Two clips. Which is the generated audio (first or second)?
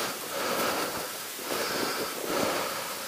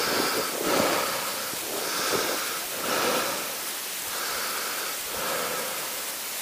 first